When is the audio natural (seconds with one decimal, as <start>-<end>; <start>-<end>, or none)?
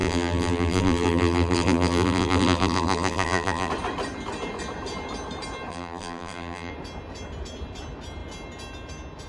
3.7-5.7; 6.7-9.3